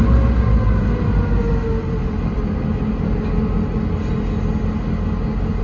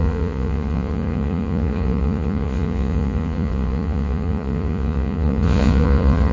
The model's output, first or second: second